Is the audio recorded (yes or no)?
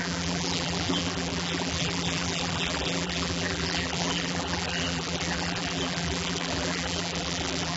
no